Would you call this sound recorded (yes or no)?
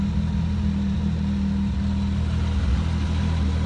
yes